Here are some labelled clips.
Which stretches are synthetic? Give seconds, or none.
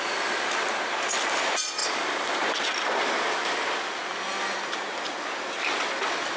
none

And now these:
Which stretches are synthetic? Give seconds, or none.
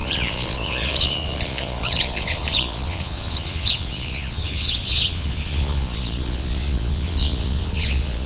0.0-8.3 (vocoder, Vocos)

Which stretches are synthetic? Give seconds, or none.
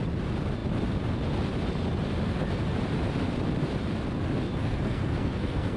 4.6-5.8 (codec, SNAC)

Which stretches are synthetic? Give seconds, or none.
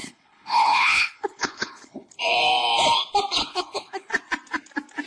0.0-2.1 (codec, HILCodec); 3.4-4.1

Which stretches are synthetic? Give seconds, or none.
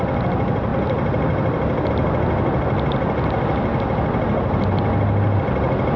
none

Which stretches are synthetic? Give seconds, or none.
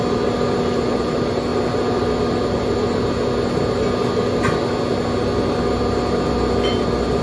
none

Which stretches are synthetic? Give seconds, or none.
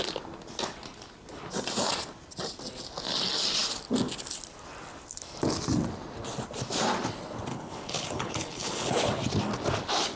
7.5-9.1 (codec, HILCodec)